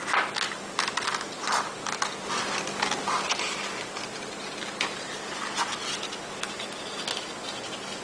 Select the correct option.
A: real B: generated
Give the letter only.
A